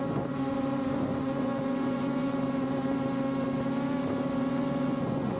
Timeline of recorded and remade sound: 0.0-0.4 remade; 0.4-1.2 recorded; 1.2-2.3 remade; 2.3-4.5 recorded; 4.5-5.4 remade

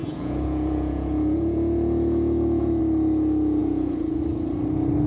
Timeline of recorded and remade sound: 0.0-2.8 remade; 2.8-3.6 recorded; 3.6-4.2 remade; 4.2-5.1 recorded

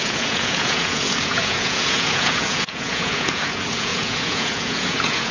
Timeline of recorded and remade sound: 0.0-5.3 remade

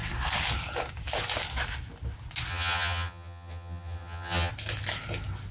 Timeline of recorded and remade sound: 0.0-2.5 recorded; 2.5-4.5 remade; 4.5-5.5 recorded

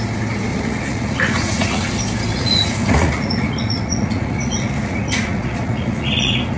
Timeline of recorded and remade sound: 0.0-0.5 recorded; 0.5-1.9 remade; 1.9-2.3 recorded; 2.3-6.6 remade

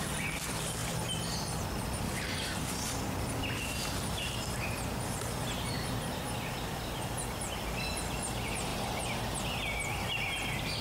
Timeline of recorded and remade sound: 0.0-8.7 recorded; 8.7-9.2 remade; 9.2-10.8 recorded